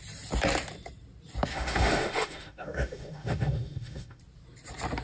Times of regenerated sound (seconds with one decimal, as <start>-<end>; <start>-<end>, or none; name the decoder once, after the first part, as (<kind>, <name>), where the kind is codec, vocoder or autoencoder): 1.5-4.2 (autoencoder, DAC-VAE)